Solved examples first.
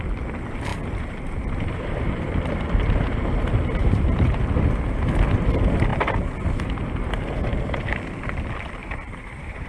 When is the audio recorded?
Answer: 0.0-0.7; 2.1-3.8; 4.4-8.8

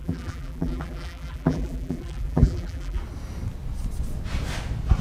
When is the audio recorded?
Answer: 3.0-5.0

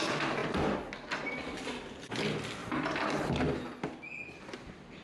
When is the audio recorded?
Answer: 0.0-5.0

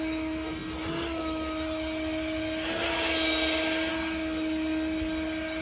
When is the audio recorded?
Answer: 0.0-5.6